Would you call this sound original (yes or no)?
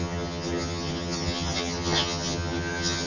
no